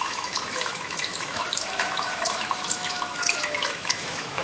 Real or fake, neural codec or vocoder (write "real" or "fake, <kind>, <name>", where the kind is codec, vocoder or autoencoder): fake, autoencoder, DAC-VAE